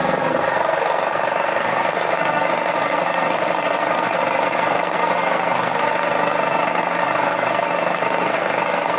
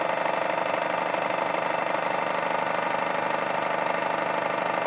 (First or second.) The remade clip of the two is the first